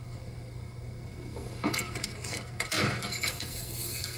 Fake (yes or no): yes